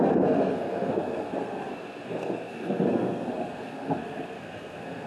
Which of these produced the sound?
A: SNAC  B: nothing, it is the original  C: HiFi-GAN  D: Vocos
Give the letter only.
A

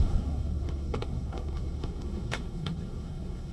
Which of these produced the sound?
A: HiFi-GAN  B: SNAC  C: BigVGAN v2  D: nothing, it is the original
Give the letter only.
B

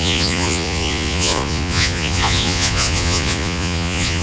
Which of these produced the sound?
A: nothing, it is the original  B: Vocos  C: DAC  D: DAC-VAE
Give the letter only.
B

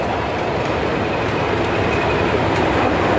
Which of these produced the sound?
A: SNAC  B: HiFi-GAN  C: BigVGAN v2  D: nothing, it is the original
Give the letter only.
C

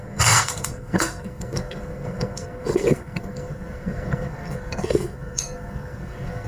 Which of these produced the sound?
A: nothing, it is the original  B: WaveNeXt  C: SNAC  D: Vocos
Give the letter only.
C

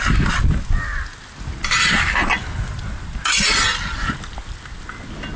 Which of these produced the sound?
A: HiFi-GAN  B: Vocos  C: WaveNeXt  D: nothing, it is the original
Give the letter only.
D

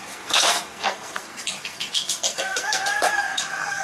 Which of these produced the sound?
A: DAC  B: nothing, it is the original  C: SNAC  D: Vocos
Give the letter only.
C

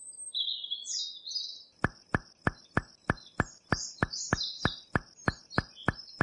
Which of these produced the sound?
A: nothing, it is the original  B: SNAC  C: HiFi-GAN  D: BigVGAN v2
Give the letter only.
A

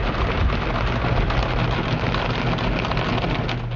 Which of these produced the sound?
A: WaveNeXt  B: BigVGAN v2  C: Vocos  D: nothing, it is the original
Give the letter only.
D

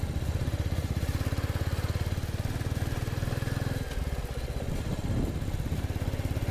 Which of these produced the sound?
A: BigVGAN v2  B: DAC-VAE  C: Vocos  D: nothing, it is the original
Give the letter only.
D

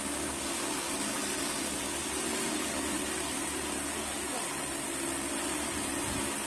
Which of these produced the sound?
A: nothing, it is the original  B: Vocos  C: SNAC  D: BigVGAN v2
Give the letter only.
A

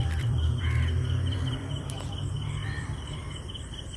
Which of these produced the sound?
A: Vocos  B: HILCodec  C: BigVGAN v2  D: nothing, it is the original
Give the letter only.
C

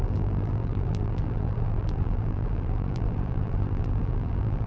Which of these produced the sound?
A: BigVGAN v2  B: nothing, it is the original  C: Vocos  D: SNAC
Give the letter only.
A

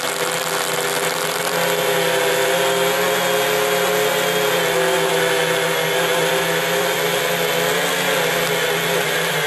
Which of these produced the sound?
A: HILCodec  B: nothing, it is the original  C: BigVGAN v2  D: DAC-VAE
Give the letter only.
B